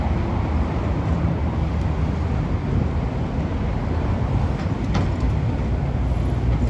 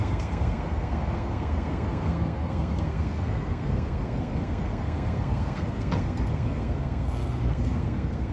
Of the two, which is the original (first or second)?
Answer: first